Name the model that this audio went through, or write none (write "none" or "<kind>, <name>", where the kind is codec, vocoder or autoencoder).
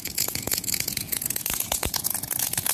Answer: vocoder, Vocos